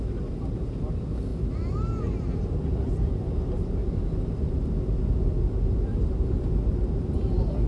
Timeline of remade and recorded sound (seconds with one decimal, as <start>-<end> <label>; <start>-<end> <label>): 0.0-3.8 recorded; 3.8-5.3 remade; 5.3-7.7 recorded